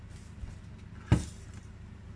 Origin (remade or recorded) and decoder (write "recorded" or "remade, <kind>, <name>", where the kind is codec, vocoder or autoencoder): recorded